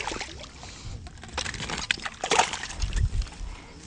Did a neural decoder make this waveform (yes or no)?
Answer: no